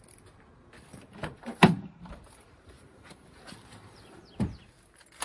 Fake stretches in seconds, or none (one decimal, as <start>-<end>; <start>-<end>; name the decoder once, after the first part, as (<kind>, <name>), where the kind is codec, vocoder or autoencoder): 1.2-4.3 (vocoder, BigVGAN v2)